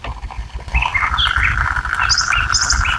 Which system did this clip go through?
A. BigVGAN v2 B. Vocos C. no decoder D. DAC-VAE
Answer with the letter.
C